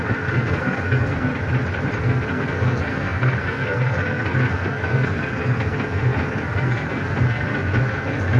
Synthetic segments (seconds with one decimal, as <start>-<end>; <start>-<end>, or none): 0.0-1.3; 2.0-8.4